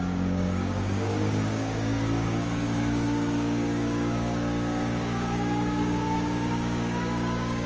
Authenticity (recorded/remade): remade